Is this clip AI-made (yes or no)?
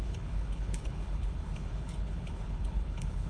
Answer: yes